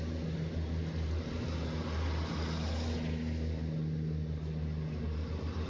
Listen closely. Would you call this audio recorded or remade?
recorded